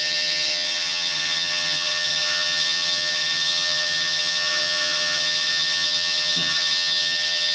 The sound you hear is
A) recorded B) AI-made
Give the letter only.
B